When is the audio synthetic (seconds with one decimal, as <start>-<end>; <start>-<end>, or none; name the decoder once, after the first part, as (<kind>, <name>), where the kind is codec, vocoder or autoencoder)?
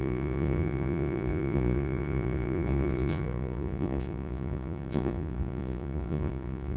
0.0-6.8 (vocoder, Vocos)